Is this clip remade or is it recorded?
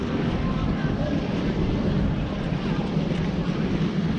remade